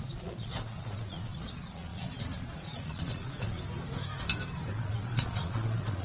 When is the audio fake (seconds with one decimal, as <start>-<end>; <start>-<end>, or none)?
0.0-3.6; 4.7-6.0